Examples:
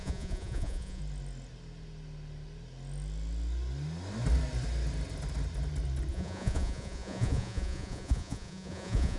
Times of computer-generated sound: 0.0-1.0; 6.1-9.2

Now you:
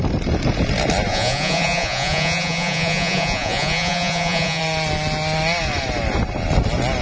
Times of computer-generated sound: 1.1-4.6

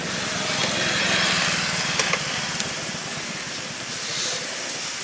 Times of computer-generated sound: none

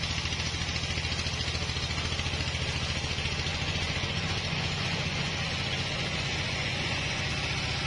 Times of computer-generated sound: 3.5-7.3

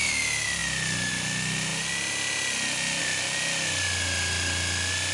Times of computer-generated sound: none

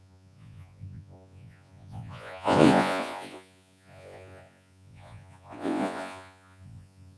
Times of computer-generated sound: 0.0-7.2

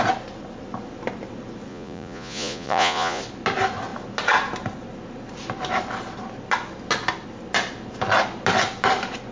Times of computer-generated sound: 1.7-3.2

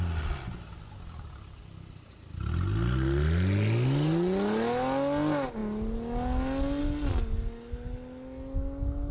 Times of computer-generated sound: none